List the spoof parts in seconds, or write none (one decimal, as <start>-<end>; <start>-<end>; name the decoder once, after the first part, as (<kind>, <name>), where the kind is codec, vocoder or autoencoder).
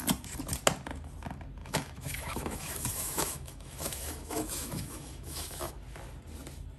1.6-5.7 (autoencoder, DAC-VAE)